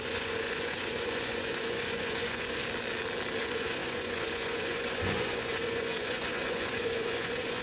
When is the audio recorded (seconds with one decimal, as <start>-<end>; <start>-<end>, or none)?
2.6-3.4

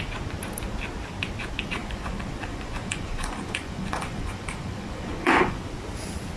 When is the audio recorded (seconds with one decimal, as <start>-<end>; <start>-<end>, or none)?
0.0-1.8; 5.6-6.4

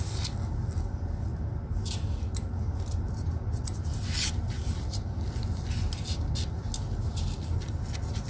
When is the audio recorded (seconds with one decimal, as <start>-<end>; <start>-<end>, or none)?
0.0-8.3